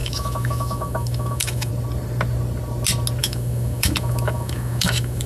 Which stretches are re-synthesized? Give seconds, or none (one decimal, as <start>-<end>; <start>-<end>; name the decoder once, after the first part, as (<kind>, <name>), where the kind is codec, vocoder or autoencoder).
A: 0.0-1.7 (autoencoder, DAC-VAE); 3.2-5.3